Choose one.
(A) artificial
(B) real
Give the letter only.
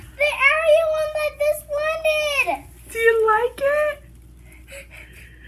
B